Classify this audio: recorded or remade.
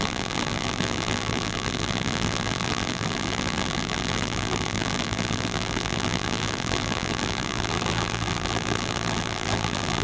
remade